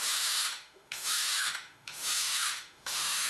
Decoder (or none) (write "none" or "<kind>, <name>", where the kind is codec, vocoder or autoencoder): autoencoder, DAC-VAE